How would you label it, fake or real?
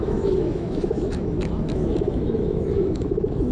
fake